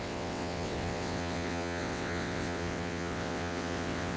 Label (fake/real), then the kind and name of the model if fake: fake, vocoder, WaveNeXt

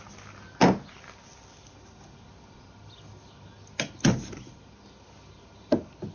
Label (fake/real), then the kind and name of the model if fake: real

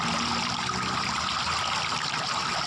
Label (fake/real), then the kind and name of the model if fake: real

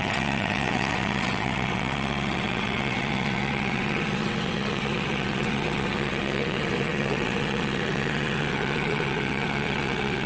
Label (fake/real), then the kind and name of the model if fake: fake, vocoder, WaveNeXt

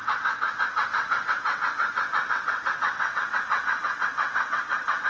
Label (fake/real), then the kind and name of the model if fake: fake, vocoder, WaveNeXt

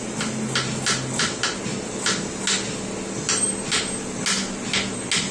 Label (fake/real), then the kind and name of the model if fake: real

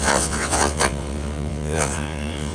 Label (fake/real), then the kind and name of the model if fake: fake, vocoder, WaveNeXt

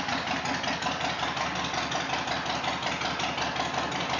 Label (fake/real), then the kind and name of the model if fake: real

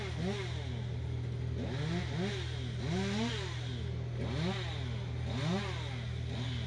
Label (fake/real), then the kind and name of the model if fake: real